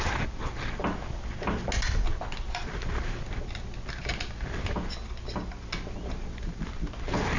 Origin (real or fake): real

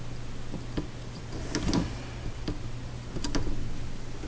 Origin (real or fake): real